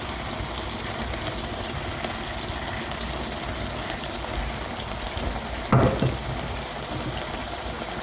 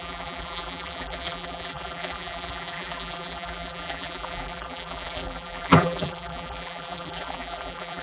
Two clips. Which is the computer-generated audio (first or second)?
second